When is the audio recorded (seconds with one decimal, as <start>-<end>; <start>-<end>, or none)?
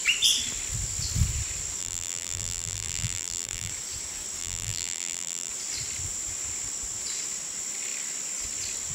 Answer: 0.0-1.8; 3.7-4.4; 5.5-8.9